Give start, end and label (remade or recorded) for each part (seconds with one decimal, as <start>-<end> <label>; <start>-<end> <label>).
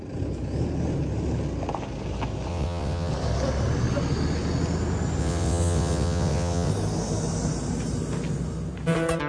0.0-2.5 recorded; 2.5-3.1 remade; 3.1-5.2 recorded; 5.2-6.7 remade; 6.7-9.3 recorded